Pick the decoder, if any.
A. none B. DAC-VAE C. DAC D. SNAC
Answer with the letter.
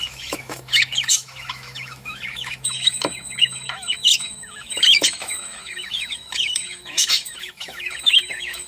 B